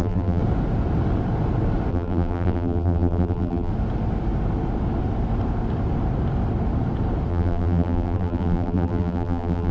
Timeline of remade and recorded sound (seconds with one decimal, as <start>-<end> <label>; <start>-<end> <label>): 0.0-0.4 remade; 0.4-1.9 recorded; 1.9-3.7 remade; 3.7-7.3 recorded; 7.3-9.7 remade